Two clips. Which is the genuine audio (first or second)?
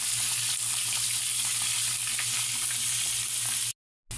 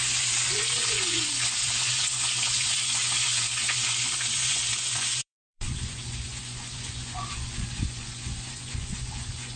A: first